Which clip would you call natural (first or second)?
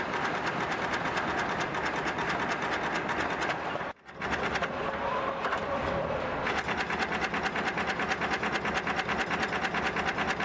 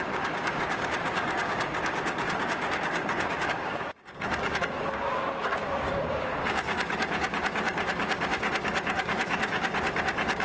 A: first